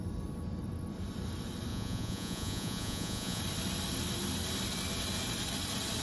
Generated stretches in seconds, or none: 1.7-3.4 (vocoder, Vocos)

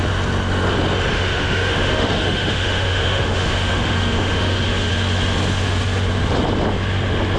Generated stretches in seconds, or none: 1.1-4.9 (autoencoder, DAC-VAE)

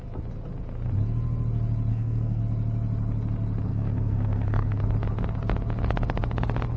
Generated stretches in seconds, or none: 1.9-2.4 (codec, SNAC); 3.7-4.8

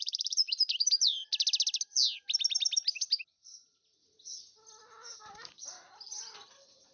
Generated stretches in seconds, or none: 0.0-1.2 (vocoder, BigVGAN v2); 5.1-6.9

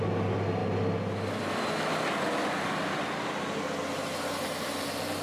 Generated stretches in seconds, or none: none

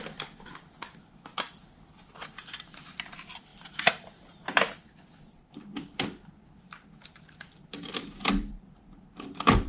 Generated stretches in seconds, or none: 0.0-9.7 (vocoder, BigVGAN v2)